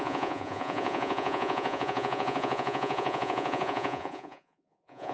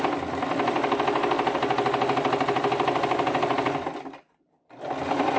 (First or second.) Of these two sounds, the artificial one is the first